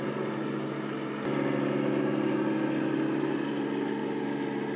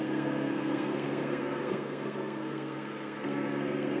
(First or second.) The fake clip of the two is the second